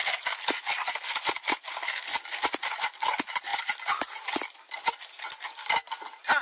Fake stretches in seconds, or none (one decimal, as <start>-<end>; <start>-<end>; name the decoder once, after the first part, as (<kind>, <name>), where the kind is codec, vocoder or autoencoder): none